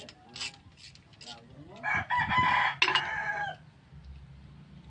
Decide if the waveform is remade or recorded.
recorded